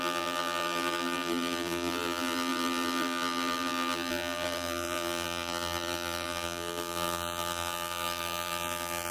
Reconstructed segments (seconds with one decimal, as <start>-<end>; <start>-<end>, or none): 0.0-9.1